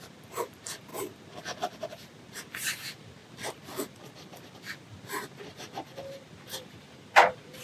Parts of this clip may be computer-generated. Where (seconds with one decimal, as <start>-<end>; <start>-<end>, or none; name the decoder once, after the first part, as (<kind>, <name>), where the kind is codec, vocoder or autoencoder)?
0.0-0.9 (vocoder, BigVGAN v2); 1.4-3.2; 5.3-7.6